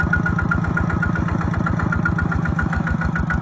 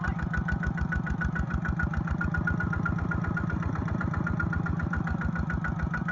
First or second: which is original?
first